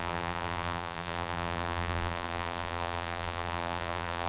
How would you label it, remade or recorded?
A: remade